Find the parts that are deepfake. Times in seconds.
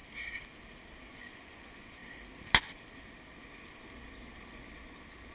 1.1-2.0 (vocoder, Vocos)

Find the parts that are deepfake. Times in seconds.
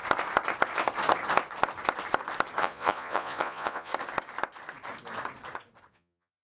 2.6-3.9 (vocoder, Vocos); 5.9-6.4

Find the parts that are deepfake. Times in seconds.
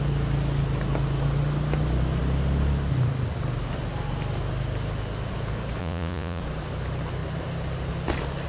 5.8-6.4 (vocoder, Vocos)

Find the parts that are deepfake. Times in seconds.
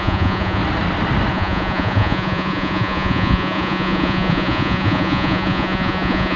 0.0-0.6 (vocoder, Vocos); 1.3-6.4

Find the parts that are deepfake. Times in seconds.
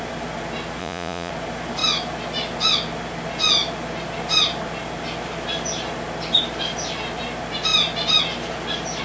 0.8-1.3 (vocoder, Vocos)